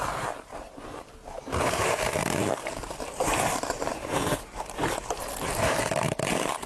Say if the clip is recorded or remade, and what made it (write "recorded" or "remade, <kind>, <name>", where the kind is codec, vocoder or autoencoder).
remade, vocoder, BigVGAN v2